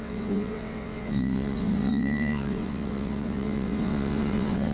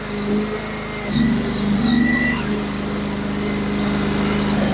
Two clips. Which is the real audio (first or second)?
second